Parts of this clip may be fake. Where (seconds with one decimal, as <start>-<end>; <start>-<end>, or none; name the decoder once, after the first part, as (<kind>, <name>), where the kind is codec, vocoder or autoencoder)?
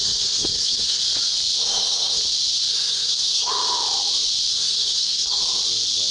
0.0-1.0 (codec, SNAC); 1.6-2.2; 2.7-3.5; 4.5-5.4